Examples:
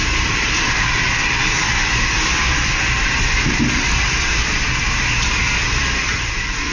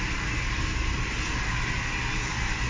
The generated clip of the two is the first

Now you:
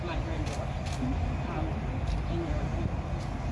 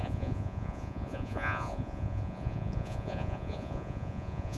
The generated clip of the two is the second